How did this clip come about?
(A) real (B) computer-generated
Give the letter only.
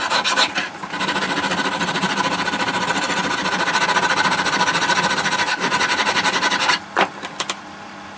A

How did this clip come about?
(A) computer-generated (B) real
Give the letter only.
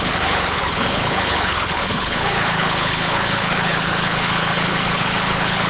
A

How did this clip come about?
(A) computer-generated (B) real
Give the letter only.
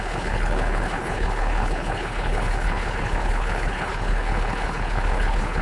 A